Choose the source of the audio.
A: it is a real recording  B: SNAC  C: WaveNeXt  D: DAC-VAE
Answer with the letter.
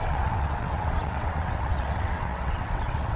C